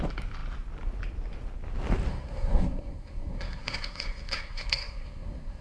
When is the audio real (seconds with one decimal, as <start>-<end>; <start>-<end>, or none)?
0.0-2.1

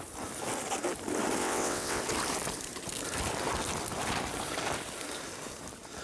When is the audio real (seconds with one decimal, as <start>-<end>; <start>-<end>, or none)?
0.0-1.4; 2.0-6.0

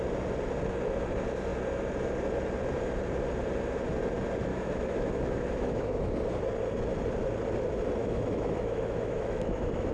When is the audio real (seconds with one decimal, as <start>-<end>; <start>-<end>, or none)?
0.0-4.5; 6.1-8.0

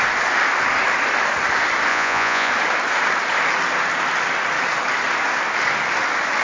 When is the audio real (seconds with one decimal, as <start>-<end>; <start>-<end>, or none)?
0.0-1.9; 2.5-6.4

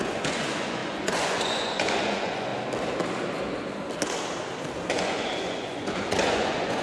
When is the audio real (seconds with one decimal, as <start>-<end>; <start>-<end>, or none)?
2.5-4.9

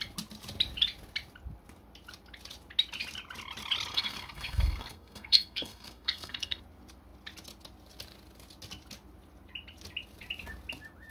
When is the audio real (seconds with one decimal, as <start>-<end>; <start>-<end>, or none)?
0.0-3.9; 6.6-11.1

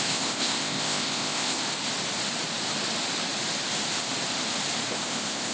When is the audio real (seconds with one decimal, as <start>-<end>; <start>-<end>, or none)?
1.6-4.9

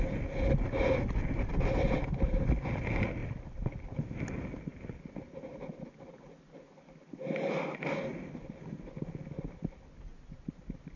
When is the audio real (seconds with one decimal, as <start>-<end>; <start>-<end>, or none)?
0.0-11.0